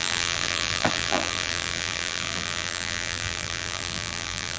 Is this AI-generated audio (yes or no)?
yes